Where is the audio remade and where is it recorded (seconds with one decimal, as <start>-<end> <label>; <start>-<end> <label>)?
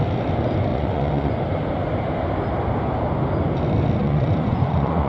0.0-0.7 recorded; 0.7-1.3 remade; 1.3-4.0 recorded; 4.0-5.1 remade